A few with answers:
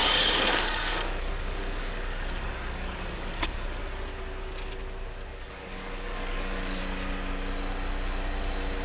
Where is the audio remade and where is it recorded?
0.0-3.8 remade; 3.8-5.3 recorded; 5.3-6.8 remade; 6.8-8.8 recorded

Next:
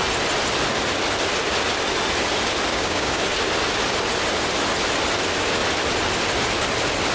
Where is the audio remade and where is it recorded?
0.0-2.7 recorded; 2.7-3.2 remade; 3.2-7.1 recorded

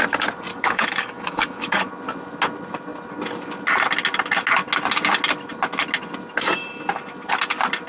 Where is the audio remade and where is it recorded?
0.0-0.5 recorded; 0.5-1.9 remade; 1.9-7.9 recorded

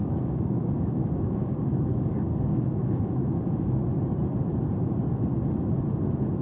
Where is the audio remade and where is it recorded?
0.0-3.8 remade; 3.8-6.4 recorded

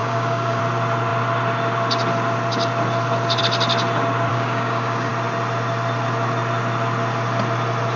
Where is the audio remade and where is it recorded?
0.0-0.6 remade; 0.6-4.3 recorded; 4.3-5.1 remade; 5.1-8.0 recorded

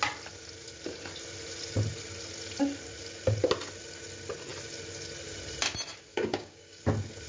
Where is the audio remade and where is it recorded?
0.0-6.1 recorded; 6.1-6.8 remade; 6.8-7.3 recorded